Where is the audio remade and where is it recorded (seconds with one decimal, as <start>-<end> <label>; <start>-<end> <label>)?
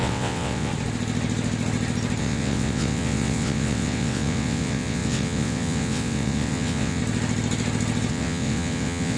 0.0-0.7 remade; 0.7-2.2 recorded; 2.2-7.0 remade; 7.0-8.1 recorded; 8.1-9.2 remade